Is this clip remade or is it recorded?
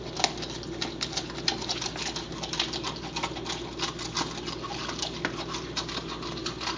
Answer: recorded